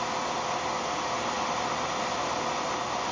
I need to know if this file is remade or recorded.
recorded